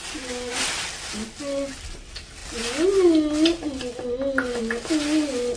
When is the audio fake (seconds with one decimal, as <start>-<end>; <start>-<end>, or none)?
none